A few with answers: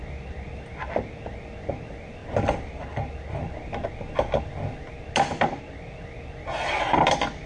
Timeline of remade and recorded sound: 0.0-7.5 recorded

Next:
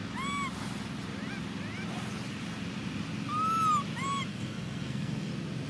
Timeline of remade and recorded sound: 0.0-4.3 recorded; 4.3-5.3 remade; 5.3-5.7 recorded

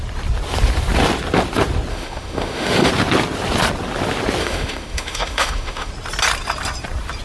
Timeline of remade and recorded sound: 0.0-1.9 recorded; 1.9-2.9 remade; 2.9-4.4 recorded; 4.4-5.9 remade; 5.9-7.2 recorded

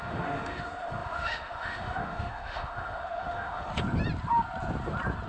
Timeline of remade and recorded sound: 0.0-3.7 remade; 3.7-5.3 recorded

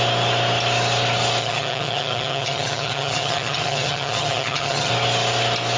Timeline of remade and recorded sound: 0.0-1.4 recorded; 1.4-4.9 remade; 4.9-5.8 recorded

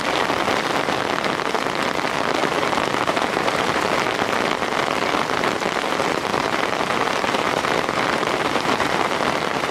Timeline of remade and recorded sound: 0.0-2.4 recorded; 2.4-3.8 remade; 3.8-6.3 recorded; 6.3-9.7 remade

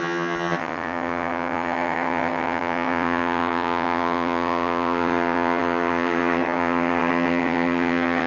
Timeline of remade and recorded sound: 0.0-8.3 remade